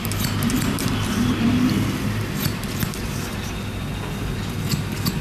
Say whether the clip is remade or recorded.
recorded